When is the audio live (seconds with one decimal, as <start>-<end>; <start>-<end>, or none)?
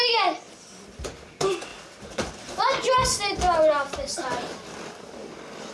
none